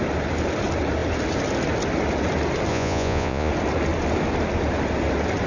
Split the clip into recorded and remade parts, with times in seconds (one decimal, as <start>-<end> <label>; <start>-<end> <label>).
0.0-2.7 recorded; 2.7-3.5 remade; 3.5-5.5 recorded